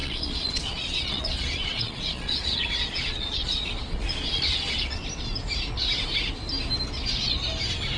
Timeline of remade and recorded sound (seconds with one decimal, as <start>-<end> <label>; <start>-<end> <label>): 0.0-5.0 remade; 5.0-8.0 recorded